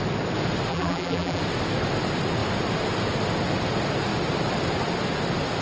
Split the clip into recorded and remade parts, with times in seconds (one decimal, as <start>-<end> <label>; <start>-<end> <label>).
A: 0.0-0.7 recorded; 0.7-1.4 remade; 1.4-5.6 recorded